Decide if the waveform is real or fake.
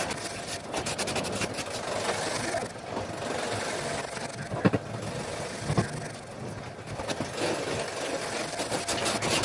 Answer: real